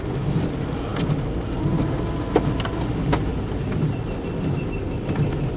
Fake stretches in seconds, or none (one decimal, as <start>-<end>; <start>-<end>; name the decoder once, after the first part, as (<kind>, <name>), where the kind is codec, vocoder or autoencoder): none